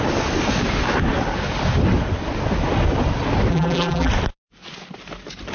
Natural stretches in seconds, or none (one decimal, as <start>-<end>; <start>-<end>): 0.0-3.5; 4.1-5.5